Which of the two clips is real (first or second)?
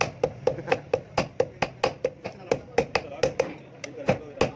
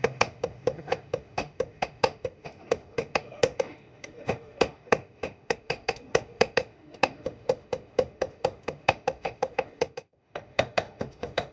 first